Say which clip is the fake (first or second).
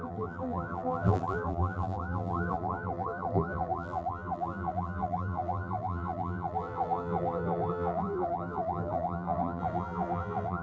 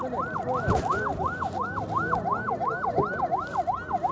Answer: first